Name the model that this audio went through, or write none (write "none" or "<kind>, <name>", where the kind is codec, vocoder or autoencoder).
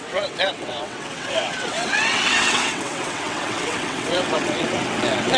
vocoder, WaveNeXt